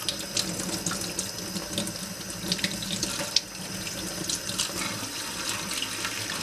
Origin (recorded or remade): recorded